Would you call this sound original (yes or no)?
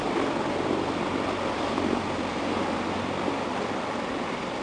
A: yes